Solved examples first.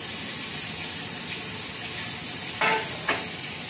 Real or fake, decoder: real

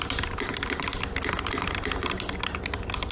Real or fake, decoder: real